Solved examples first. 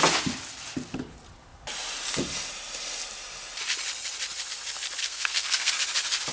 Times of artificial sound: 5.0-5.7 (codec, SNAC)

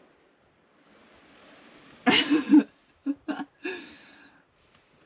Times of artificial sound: none

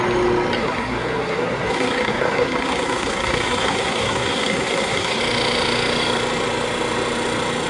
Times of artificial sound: 0.6-5.2 (codec, SNAC)

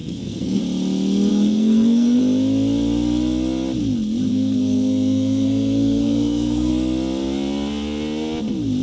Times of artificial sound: 0.0-0.6 (codec, SNAC); 1.3-2.2; 4.3-6.7

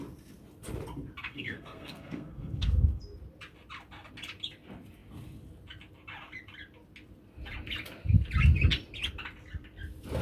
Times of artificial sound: 1.3-3.0 (codec, SNAC)

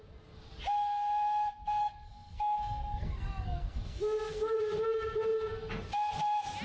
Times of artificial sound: 1.8-4.6 (codec, SNAC)